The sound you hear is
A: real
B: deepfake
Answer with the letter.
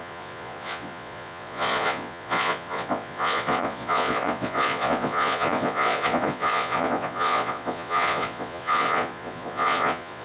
B